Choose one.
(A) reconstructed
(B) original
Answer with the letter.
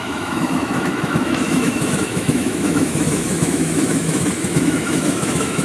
A